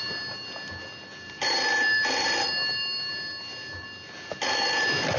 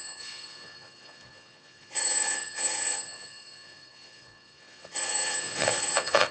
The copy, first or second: second